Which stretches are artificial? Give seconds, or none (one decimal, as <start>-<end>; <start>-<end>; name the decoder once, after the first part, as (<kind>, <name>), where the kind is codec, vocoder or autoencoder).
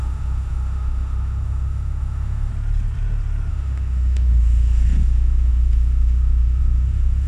0.0-2.5 (autoencoder, DAC-VAE); 3.5-7.3